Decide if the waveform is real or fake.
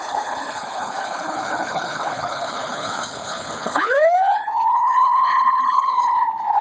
fake